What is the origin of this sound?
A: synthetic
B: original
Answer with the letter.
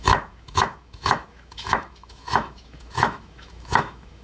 A